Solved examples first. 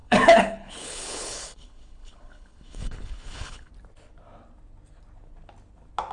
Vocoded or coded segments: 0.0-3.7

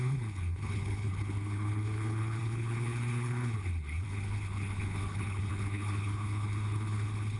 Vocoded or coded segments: 0.0-7.4

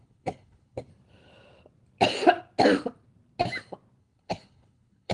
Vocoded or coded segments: 0.0-0.9; 4.0-5.1